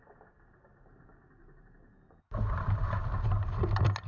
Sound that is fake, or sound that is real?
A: real